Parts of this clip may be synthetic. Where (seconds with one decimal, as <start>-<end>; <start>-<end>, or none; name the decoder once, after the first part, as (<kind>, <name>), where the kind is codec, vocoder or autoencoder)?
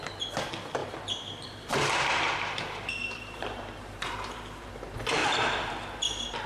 0.8-4.7 (vocoder, BigVGAN v2); 5.2-5.7